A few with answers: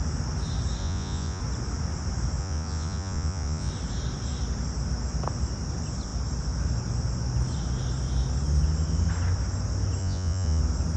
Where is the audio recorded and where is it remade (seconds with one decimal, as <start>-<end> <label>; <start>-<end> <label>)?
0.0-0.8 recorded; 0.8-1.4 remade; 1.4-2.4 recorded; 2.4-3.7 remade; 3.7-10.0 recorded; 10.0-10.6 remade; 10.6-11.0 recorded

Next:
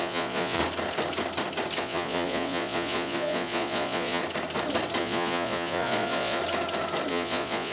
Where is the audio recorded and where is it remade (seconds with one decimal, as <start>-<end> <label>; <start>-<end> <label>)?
0.0-0.6 remade; 0.6-1.8 recorded; 1.8-4.2 remade; 4.2-5.0 recorded; 5.0-6.4 remade; 6.4-7.1 recorded; 7.1-7.7 remade

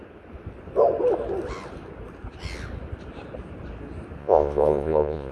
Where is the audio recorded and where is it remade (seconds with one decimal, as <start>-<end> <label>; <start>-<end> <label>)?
0.0-4.2 recorded; 4.2-5.3 remade

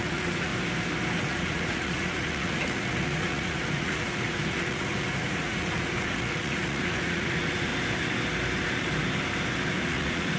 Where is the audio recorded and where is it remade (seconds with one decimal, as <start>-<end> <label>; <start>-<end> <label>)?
0.0-0.5 remade; 0.5-1.2 recorded; 1.2-7.7 remade; 7.7-9.8 recorded; 9.8-10.4 remade

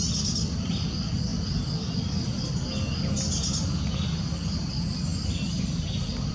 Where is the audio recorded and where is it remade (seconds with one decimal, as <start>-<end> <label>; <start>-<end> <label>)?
0.0-6.3 recorded

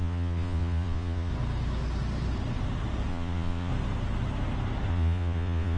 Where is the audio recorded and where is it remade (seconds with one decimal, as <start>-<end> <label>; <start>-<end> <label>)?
0.0-1.3 remade; 1.3-3.1 recorded; 3.1-3.7 remade; 3.7-4.9 recorded; 4.9-5.8 remade